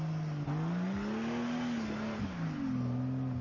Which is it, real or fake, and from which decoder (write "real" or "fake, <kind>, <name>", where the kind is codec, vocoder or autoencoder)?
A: real